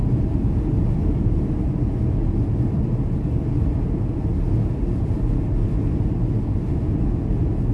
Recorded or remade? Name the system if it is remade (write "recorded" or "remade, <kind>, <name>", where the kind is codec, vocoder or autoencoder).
recorded